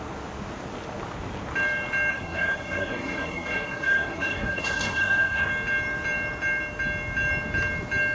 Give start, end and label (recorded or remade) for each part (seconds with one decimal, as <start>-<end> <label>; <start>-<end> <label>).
0.0-2.1 recorded; 2.1-5.5 remade; 5.5-8.1 recorded